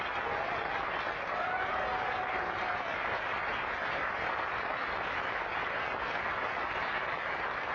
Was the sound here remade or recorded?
recorded